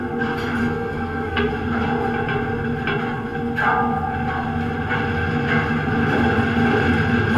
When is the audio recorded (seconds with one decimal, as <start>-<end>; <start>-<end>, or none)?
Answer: 0.0-0.6; 1.5-7.4